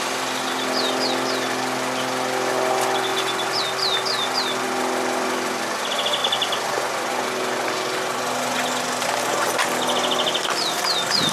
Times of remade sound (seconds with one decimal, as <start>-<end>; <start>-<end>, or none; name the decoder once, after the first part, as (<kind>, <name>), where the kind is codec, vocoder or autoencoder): none